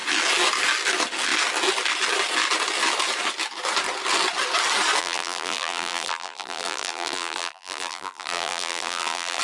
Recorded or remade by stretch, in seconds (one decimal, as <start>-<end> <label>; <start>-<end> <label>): 0.0-5.0 recorded; 5.0-9.4 remade